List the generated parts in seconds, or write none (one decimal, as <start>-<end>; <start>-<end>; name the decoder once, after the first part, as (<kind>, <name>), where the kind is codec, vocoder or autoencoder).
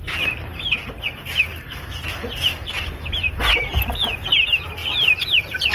4.8-5.7 (vocoder, BigVGAN v2)